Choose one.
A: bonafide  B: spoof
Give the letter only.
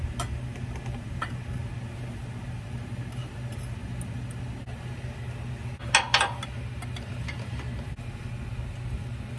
A